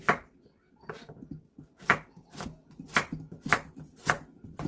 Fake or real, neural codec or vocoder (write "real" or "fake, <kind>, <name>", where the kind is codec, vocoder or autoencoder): real